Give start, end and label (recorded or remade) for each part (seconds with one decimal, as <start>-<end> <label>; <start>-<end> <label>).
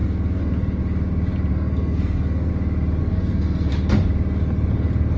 0.0-0.8 remade; 0.8-1.5 recorded; 1.5-2.5 remade; 2.5-3.0 recorded; 3.0-3.7 remade; 3.7-5.2 recorded